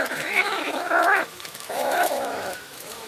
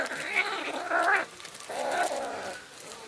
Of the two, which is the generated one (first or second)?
first